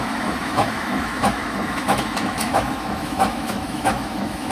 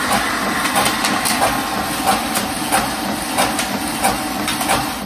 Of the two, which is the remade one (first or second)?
first